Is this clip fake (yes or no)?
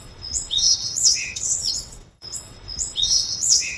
yes